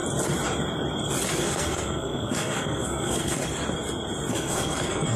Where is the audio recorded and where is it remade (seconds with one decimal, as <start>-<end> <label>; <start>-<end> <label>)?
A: 0.0-1.3 recorded; 1.3-3.4 remade; 3.4-4.3 recorded; 4.3-5.2 remade